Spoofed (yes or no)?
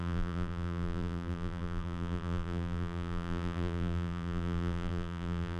yes